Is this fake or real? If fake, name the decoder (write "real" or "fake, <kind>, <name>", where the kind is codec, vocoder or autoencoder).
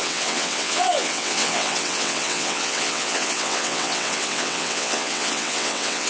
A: fake, vocoder, WaveNeXt